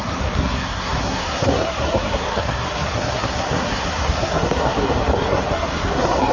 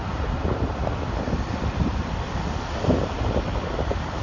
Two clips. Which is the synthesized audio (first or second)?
first